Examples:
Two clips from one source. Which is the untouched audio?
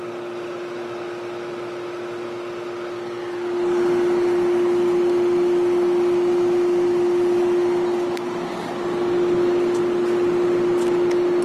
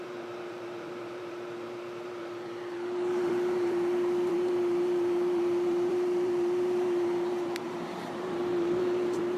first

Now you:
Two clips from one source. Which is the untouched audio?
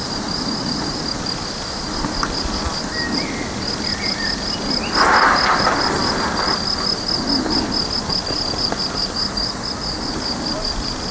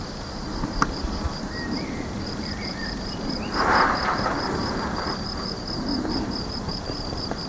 first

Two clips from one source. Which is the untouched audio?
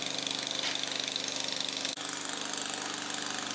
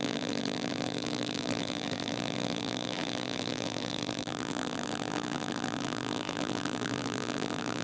first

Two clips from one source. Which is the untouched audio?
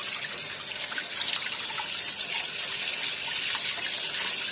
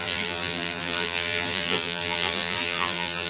first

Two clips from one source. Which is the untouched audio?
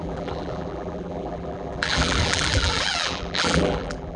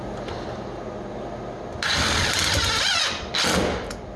second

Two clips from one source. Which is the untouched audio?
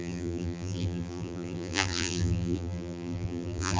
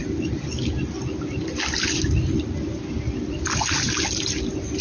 second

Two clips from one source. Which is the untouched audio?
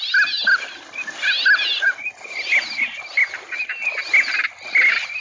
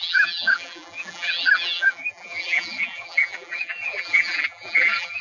first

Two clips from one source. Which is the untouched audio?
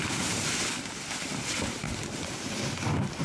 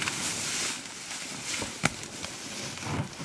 second